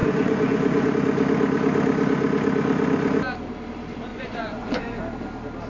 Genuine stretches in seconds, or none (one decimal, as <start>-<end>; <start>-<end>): 0.9-4.1; 5.0-5.7